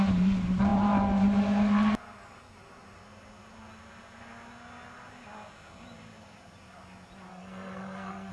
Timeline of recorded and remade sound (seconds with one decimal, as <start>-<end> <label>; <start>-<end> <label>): 0.0-7.3 recorded; 7.3-8.3 remade